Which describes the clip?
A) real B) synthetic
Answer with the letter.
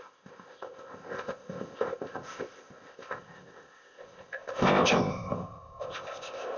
B